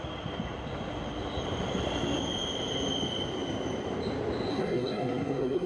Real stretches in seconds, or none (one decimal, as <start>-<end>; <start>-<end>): 0.0-4.5